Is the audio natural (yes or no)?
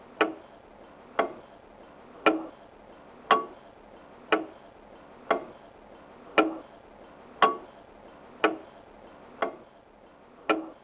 yes